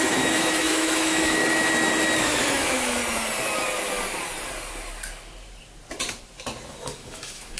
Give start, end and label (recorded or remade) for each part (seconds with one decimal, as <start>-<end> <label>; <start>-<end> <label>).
0.0-1.4 remade; 1.4-2.2 recorded; 2.2-3.0 remade; 3.0-6.7 recorded; 6.7-7.6 remade